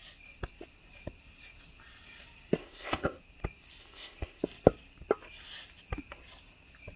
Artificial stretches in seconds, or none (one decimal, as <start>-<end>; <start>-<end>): 2.6-3.2; 3.8-4.4

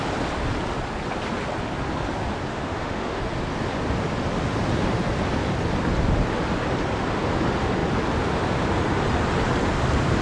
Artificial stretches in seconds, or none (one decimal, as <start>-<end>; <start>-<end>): 2.5-3.2

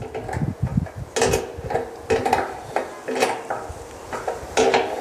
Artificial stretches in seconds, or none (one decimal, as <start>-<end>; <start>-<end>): none

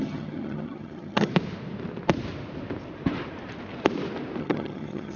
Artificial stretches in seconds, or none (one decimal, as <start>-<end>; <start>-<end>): 0.0-1.3; 4.4-5.2

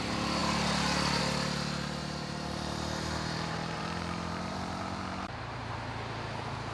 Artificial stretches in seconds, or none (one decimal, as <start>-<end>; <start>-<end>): 2.0-5.7

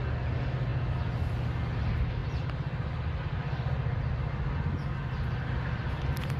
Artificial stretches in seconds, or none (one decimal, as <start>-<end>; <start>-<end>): none

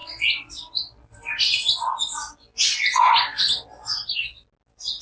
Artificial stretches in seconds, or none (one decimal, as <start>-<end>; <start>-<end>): none